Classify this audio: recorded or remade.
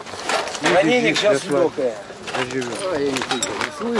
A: recorded